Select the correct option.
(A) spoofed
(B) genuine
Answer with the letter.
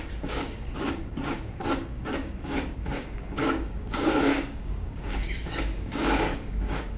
A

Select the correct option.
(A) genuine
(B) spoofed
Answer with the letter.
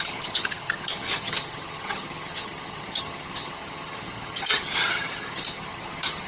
B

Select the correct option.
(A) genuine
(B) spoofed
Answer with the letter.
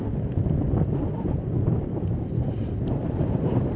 B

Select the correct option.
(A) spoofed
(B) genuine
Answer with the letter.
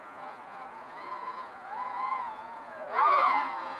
A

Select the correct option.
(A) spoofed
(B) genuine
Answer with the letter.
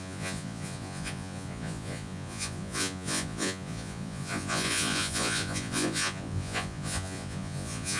A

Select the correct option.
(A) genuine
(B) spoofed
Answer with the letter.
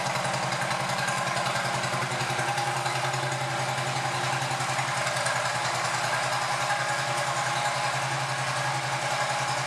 A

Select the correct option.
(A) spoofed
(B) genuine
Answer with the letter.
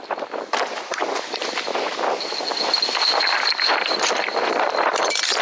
B